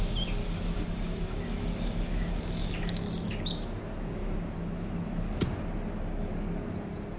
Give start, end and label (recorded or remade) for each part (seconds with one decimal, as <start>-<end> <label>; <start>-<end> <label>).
0.0-0.4 recorded; 0.4-3.4 remade; 3.4-4.2 recorded; 4.2-5.3 remade; 5.3-7.2 recorded